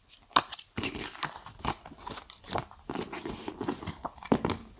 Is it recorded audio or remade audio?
recorded